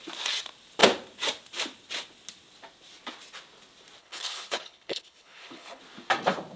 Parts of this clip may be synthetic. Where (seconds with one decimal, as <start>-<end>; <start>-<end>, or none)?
4.0-5.8

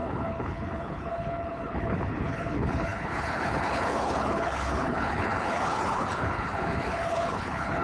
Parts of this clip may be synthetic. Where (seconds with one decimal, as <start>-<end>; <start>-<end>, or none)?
0.0-7.8

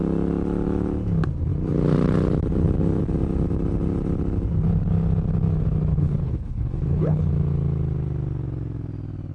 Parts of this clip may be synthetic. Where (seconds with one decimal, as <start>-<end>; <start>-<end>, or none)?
5.9-7.3

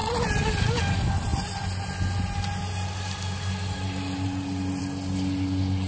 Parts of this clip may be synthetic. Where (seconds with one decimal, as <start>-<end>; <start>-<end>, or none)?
none

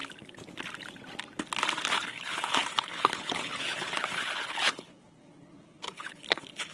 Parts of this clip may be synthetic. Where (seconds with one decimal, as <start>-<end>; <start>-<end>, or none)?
1.9-6.7

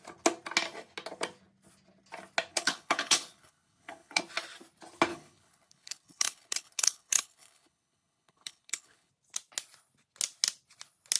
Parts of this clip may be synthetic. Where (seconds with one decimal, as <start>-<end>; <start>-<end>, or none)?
2.5-4.2; 5.1-9.1

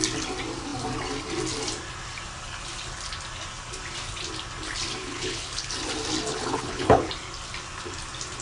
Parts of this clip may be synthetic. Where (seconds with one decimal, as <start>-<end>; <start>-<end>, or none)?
5.0-5.7; 6.3-7.1